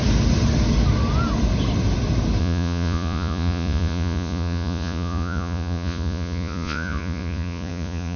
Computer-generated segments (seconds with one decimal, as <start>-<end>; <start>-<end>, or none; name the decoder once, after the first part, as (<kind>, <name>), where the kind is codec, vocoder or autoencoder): 2.4-8.2 (vocoder, Vocos)